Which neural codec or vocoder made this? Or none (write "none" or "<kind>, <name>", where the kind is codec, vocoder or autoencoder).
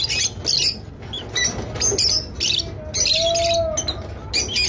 none